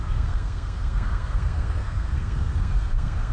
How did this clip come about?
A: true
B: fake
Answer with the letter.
B